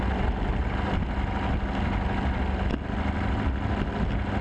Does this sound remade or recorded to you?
recorded